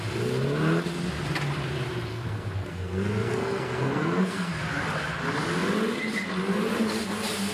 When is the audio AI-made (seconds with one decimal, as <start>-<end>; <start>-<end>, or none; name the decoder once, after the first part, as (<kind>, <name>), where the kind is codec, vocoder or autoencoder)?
2.1-4.5 (codec, SNAC)